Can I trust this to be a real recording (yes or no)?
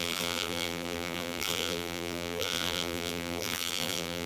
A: no